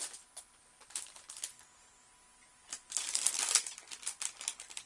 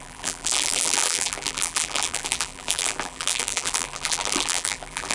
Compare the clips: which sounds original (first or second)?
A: first